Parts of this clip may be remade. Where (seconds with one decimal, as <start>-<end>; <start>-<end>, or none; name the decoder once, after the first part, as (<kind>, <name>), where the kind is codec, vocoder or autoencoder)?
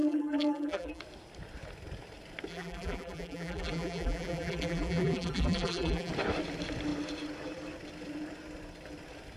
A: 0.0-1.0 (vocoder, BigVGAN v2); 2.5-6.1